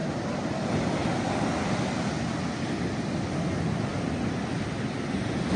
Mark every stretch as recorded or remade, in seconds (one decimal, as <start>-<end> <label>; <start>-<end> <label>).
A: 0.0-5.6 recorded